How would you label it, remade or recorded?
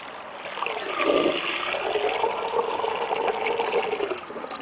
recorded